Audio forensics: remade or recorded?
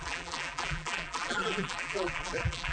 remade